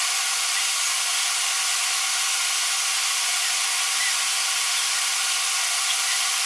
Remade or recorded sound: recorded